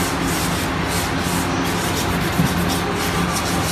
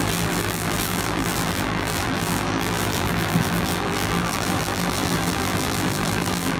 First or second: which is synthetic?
second